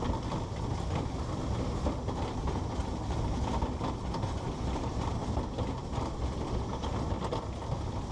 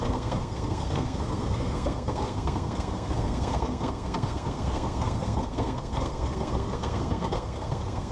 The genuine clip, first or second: first